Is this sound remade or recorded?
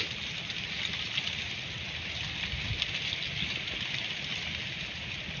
recorded